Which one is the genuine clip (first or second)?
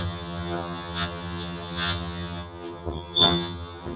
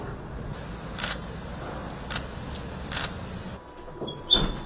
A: second